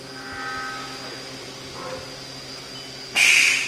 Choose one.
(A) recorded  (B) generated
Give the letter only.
A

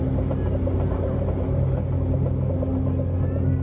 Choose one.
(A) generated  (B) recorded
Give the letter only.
B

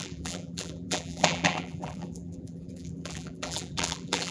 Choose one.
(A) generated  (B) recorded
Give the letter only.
A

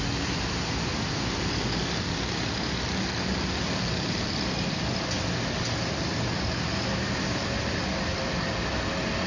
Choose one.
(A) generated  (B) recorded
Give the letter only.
B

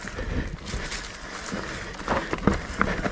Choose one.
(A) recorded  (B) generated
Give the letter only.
A